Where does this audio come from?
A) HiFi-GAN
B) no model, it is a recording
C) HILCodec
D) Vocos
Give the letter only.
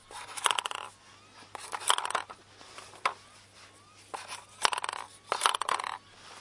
B